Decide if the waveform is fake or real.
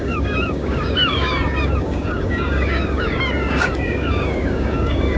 fake